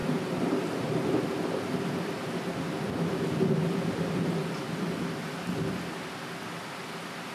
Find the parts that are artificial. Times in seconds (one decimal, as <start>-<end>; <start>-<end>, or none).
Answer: 0.0-0.8